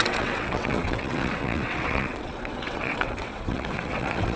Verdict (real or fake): fake